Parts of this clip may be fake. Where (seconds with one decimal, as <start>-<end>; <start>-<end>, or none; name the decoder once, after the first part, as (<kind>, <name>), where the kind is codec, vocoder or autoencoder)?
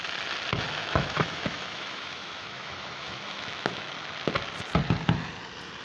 0.8-3.9 (autoencoder, DAC-VAE)